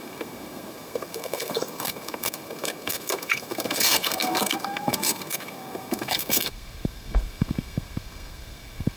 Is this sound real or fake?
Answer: fake